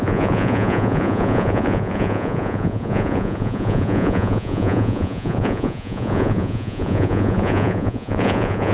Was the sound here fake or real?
fake